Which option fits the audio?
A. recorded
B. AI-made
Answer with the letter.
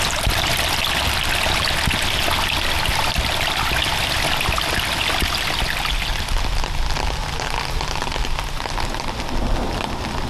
A